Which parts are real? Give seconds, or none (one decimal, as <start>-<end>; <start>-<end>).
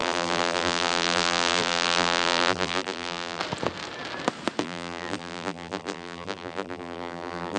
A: 3.4-4.6